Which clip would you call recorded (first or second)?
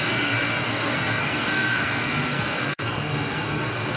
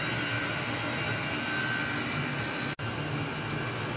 second